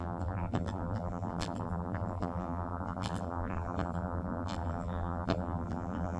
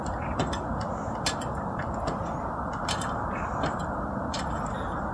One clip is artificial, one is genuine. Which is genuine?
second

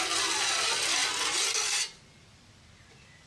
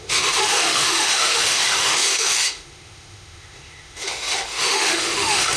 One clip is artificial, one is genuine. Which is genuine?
first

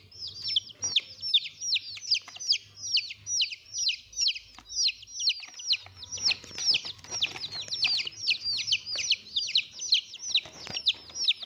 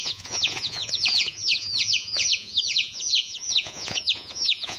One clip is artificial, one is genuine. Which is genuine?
first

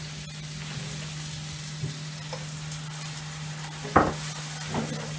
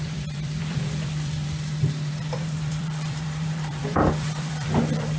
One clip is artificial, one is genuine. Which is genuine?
first